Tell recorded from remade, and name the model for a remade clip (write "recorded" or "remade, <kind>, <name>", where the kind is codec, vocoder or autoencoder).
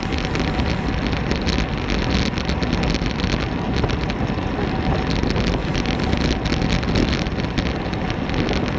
recorded